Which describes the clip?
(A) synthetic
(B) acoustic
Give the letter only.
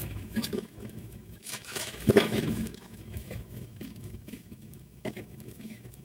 A